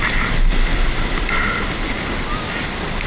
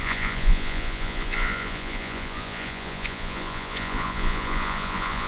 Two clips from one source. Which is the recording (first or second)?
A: first